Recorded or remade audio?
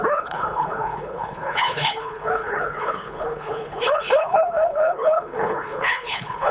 remade